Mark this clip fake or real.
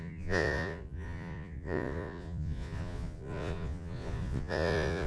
fake